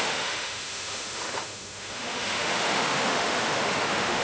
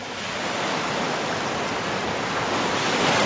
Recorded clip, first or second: second